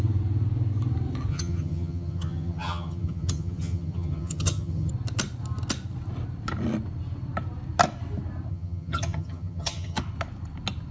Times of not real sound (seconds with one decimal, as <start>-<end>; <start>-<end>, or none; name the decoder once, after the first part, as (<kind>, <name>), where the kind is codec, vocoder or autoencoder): 1.3-4.9 (vocoder, HiFi-GAN); 8.5-10.0